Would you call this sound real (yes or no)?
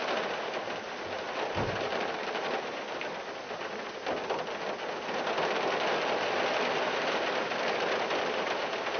yes